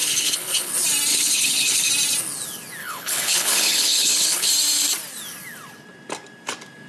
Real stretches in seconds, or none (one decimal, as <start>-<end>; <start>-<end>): 0.7-1.1; 1.9-2.8; 4.5-6.9